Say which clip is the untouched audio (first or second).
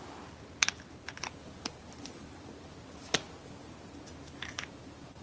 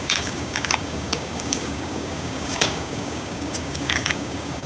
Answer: first